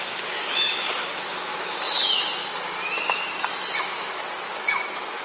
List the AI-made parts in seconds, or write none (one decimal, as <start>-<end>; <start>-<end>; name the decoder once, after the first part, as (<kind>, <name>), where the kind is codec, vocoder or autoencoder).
0.0-2.4 (autoencoder, DAC-VAE); 3.8-5.2